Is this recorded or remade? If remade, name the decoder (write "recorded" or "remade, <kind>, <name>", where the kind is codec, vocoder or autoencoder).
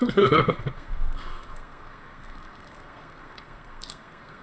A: remade, codec, SNAC